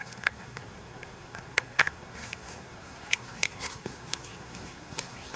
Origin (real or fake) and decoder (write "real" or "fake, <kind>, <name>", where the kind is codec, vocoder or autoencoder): fake, codec, SNAC